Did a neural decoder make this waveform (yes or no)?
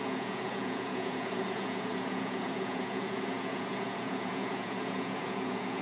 yes